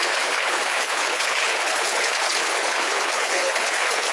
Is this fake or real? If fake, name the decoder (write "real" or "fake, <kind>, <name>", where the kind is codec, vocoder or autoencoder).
fake, codec, HILCodec